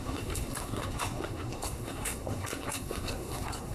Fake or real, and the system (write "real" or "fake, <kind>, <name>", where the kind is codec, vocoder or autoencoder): fake, codec, SNAC